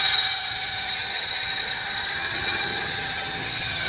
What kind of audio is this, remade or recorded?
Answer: remade